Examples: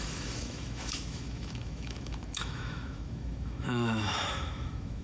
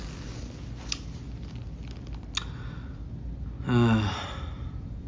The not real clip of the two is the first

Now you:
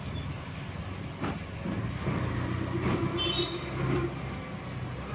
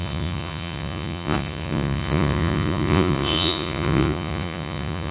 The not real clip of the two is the second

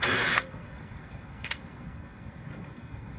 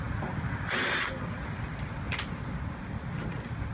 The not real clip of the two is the first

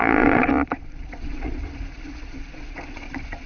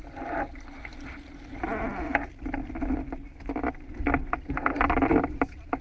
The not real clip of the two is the first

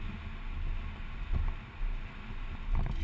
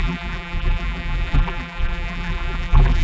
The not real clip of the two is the second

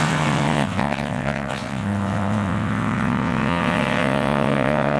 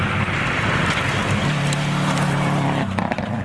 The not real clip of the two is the first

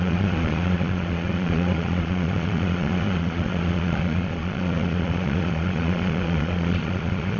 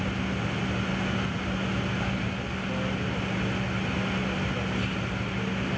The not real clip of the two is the first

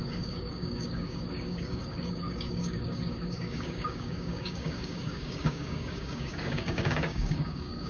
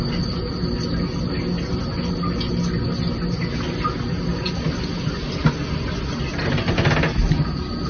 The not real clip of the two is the first